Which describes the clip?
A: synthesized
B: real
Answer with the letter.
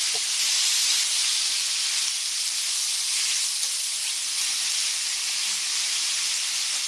B